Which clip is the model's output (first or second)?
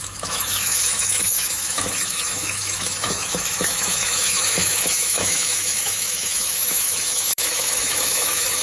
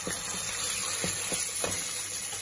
first